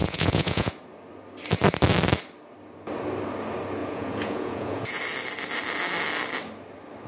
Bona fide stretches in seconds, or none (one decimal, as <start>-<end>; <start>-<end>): 0.7-3.8; 5.0-7.1